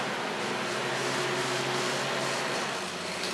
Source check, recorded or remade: recorded